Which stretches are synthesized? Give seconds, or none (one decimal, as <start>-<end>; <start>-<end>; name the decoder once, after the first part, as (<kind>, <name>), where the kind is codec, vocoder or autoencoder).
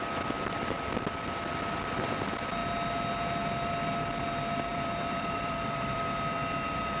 4.7-6.0 (vocoder, BigVGAN v2)